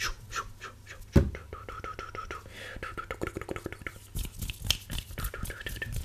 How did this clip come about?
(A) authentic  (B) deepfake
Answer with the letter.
A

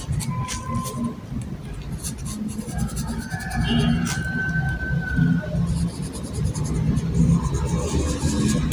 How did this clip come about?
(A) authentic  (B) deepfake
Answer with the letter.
A